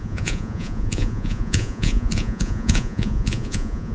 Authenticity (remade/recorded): remade